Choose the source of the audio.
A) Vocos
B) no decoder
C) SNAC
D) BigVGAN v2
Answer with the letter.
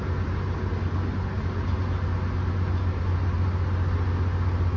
B